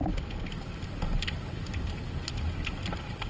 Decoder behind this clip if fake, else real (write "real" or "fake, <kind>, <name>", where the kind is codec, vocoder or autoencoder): real